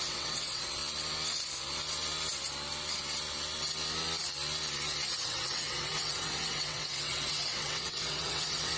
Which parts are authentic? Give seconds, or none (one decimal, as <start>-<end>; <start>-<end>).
0.8-5.1